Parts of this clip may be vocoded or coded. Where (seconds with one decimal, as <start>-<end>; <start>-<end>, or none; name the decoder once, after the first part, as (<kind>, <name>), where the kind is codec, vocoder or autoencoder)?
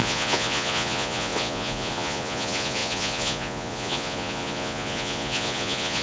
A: 0.0-6.0 (vocoder, Vocos)